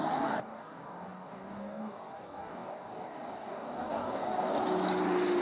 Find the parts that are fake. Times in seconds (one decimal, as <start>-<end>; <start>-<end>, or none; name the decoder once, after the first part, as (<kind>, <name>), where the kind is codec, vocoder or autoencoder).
0.0-4.5 (codec, DAC)